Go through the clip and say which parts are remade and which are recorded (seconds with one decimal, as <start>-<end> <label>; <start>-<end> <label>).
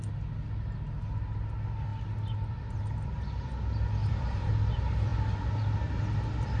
0.0-4.0 recorded; 4.0-4.5 remade; 4.5-6.6 recorded